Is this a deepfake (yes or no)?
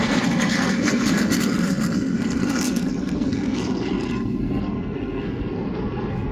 yes